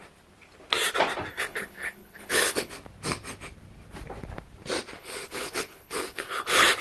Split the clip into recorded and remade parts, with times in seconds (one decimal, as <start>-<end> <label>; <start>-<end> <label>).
0.0-1.3 recorded; 1.3-2.7 remade; 2.7-5.0 recorded; 5.0-6.8 remade